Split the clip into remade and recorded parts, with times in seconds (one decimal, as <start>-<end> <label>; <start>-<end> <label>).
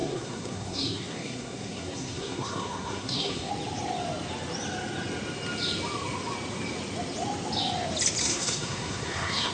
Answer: 0.0-3.5 remade; 3.5-8.2 recorded; 8.2-9.5 remade